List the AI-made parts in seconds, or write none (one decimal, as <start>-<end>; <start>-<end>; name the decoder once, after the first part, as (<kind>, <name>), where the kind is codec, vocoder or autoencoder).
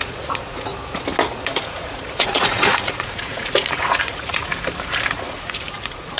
0.0-0.7 (vocoder, Vocos); 1.3-4.5; 5.1-6.2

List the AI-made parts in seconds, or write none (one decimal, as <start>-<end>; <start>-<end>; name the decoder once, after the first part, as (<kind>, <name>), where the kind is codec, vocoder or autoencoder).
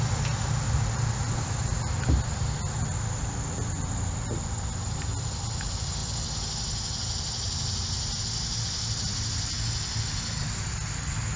none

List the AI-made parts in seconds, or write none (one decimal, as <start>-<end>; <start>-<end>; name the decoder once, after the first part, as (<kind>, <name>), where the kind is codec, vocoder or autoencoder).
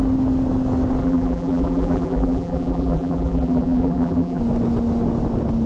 1.0-4.4 (vocoder, BigVGAN v2)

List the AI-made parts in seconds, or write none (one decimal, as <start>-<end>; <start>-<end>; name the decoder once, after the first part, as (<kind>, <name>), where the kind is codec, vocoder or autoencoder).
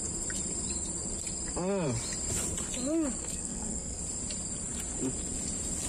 3.2-4.0 (codec, SNAC)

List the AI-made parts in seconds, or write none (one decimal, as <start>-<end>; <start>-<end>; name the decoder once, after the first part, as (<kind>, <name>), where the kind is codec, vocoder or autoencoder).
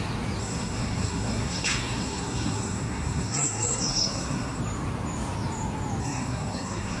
0.4-4.6 (codec, SNAC); 6.0-7.0